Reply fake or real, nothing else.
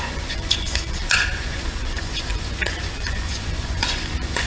fake